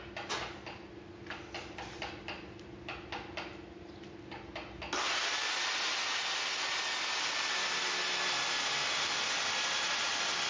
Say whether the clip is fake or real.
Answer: real